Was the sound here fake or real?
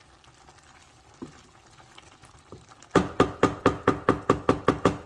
real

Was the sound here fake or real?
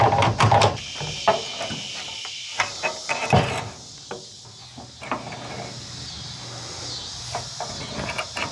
real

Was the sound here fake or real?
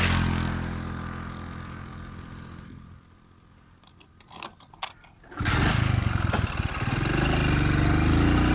real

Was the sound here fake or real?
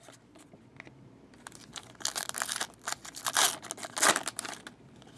real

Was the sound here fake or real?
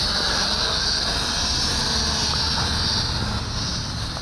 real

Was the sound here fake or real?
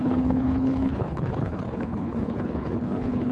fake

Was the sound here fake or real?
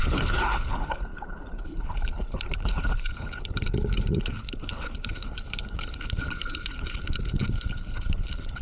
fake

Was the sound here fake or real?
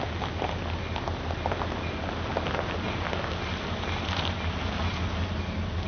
real